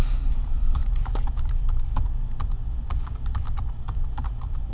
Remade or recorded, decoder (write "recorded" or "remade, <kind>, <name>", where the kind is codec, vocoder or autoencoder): remade, vocoder, BigVGAN v2